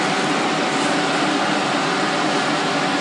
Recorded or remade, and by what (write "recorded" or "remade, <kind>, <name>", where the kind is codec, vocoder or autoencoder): recorded